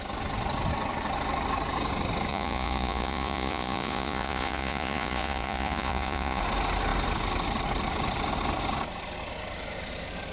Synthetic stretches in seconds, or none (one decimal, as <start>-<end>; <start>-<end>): 2.3-6.4